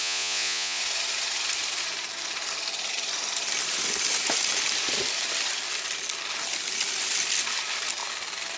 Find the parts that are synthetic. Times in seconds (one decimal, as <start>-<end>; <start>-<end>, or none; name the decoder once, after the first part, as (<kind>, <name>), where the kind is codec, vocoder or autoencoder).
0.0-0.8 (vocoder, Vocos)